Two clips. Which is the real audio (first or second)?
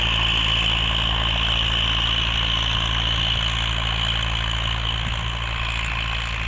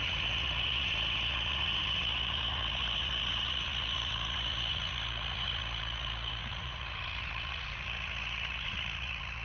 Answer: first